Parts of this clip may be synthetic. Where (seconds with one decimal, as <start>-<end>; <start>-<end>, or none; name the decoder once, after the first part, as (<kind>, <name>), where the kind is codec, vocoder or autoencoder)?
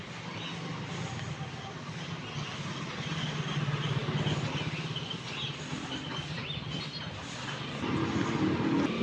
none